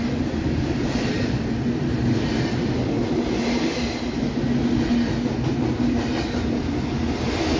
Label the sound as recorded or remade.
recorded